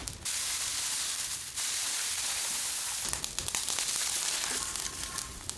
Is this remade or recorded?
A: recorded